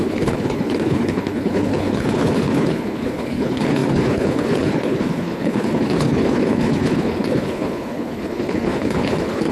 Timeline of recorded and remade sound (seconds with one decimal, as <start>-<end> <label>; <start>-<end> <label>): 0.0-9.5 remade